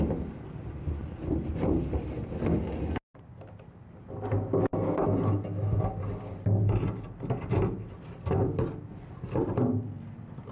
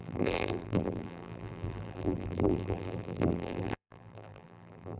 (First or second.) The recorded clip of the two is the first